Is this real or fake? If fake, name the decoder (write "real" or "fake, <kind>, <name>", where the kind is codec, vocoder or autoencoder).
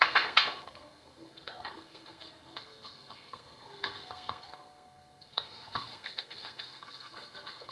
fake, codec, SNAC